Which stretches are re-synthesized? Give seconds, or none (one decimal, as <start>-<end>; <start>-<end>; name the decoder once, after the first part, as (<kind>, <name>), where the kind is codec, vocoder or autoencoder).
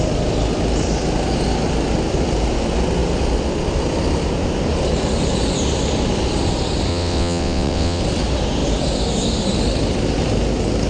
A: 6.9-8.0 (vocoder, WaveNeXt)